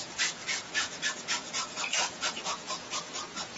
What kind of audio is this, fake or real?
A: fake